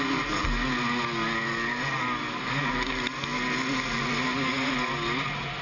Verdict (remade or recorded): recorded